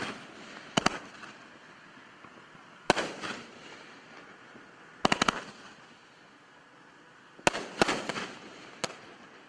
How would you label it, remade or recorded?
recorded